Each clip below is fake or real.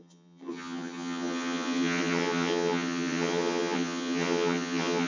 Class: fake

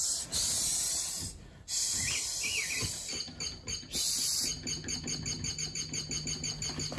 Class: real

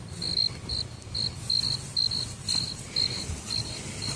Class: real